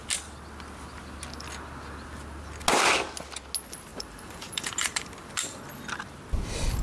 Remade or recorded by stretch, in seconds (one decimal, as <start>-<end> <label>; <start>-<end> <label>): 0.0-3.9 recorded; 3.9-5.6 remade; 5.6-6.8 recorded